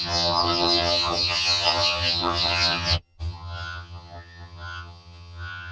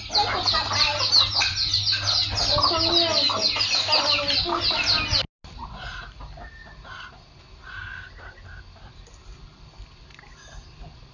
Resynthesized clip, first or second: first